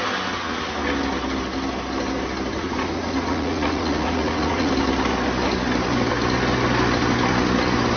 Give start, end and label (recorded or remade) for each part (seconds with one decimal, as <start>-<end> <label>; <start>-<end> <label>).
0.0-2.5 recorded; 2.5-4.7 remade; 4.7-8.0 recorded